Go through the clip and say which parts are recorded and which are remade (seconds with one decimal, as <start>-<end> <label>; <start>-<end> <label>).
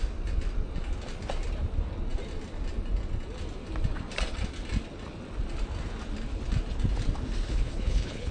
0.0-7.5 recorded; 7.5-8.3 remade